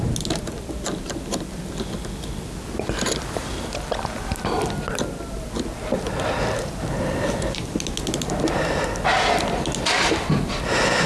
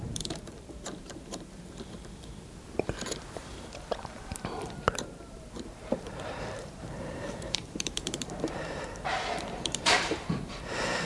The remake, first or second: second